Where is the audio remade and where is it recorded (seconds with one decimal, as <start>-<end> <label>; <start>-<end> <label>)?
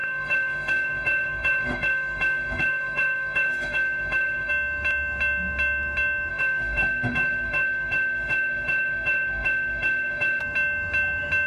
0.0-4.5 remade; 4.5-6.3 recorded; 6.3-10.4 remade; 10.4-11.5 recorded